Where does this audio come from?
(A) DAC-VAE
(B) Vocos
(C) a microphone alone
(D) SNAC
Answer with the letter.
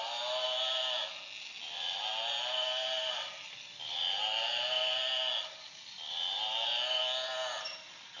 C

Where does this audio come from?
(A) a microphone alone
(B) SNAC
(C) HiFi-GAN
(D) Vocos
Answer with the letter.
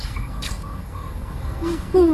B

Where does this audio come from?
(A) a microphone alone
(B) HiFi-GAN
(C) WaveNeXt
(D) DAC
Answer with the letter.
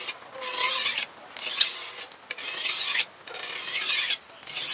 A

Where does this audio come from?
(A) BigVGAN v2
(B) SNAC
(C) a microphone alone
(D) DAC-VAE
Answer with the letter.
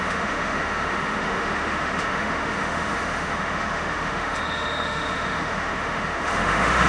D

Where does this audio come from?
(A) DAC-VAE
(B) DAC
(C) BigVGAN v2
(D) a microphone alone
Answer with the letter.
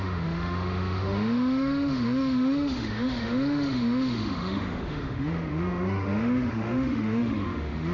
A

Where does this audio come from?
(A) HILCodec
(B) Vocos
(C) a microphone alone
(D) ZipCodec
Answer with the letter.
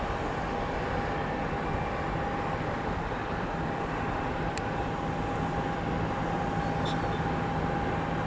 C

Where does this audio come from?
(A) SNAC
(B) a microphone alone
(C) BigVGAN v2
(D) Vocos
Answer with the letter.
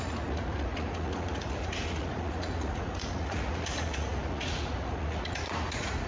D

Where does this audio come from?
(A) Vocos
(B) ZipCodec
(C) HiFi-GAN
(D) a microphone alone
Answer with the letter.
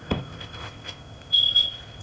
B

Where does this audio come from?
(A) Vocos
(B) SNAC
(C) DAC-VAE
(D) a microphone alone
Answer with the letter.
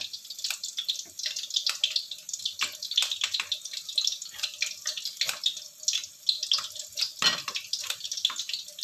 D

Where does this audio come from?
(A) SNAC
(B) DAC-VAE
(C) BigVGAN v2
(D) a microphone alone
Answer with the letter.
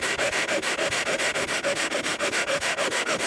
B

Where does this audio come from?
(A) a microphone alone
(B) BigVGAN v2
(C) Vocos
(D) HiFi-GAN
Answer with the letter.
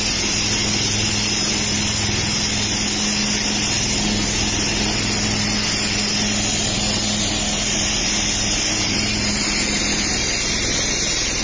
A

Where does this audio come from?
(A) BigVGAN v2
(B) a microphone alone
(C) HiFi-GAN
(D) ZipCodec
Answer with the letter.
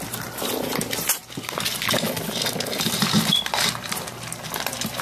B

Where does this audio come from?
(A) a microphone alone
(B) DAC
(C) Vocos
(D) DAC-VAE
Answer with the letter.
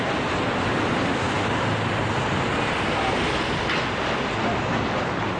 A